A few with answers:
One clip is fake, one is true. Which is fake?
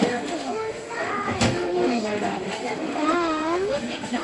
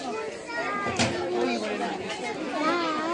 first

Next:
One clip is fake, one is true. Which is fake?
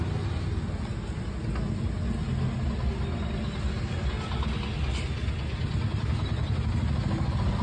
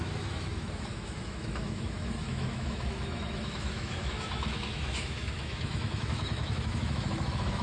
second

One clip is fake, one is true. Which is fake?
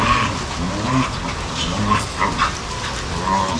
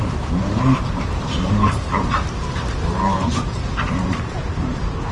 second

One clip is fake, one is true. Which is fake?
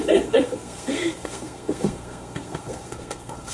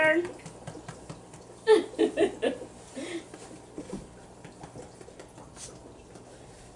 first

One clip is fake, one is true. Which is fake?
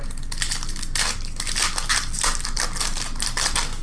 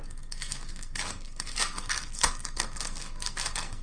second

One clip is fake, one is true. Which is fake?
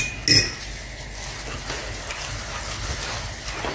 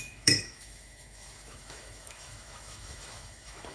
second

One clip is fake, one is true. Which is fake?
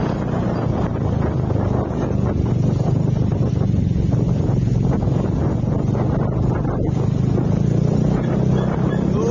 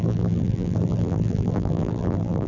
second